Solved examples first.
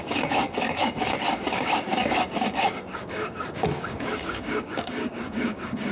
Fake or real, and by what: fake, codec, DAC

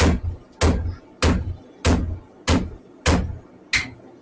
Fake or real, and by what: real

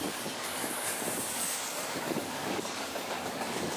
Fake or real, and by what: fake, codec, DAC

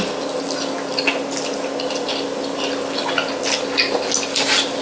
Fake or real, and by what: real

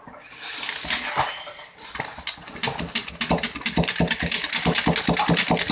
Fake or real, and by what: real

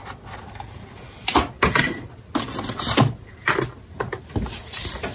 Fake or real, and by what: real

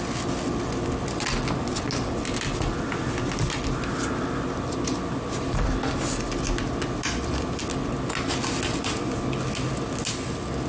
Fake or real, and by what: real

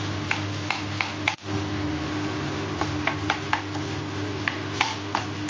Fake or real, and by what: real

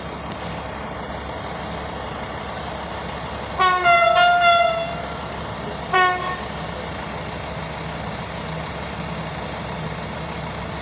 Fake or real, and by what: real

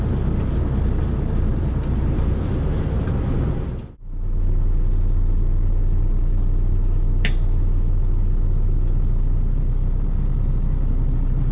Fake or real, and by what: real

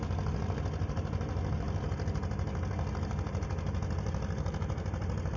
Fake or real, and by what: real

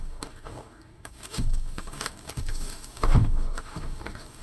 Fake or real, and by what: fake, codec, DAC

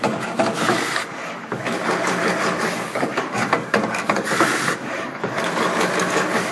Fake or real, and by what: fake, codec, DAC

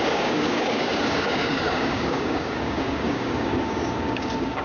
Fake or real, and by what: fake, codec, DAC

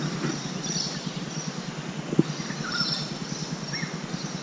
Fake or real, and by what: real